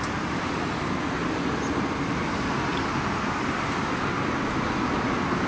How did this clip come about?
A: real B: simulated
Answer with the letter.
A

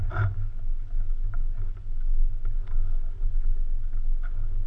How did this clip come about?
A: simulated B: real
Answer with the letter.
B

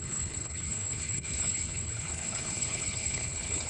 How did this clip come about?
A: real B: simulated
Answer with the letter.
B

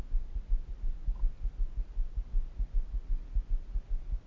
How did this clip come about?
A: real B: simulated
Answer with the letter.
A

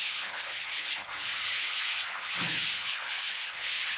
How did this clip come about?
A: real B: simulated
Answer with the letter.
B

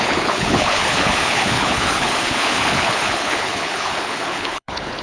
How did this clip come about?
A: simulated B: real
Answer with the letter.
A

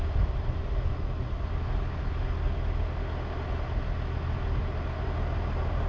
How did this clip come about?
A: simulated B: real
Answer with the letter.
B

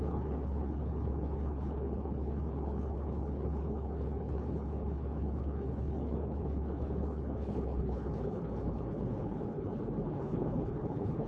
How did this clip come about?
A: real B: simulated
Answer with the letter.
B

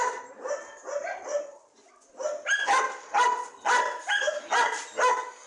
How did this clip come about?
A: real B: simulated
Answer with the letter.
A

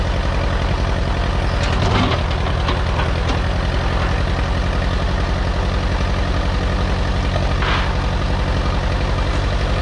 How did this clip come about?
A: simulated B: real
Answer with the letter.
B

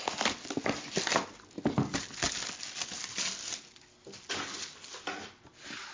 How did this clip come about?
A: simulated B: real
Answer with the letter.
B